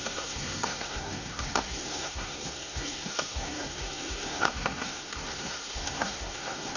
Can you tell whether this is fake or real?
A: fake